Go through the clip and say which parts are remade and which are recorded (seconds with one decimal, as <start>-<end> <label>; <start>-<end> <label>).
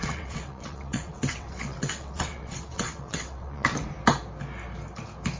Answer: 0.0-3.7 remade; 3.7-5.4 recorded